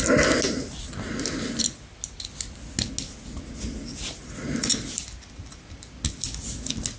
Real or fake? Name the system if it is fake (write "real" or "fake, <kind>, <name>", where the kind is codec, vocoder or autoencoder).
real